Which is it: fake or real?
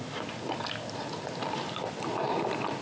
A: real